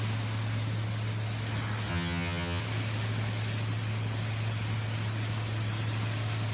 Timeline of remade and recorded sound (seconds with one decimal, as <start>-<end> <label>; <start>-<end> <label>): 0.0-1.9 recorded; 1.9-2.6 remade; 2.6-6.5 recorded